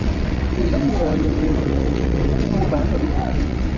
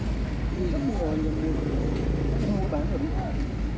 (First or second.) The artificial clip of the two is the first